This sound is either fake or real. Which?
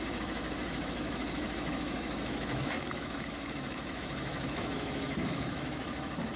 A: fake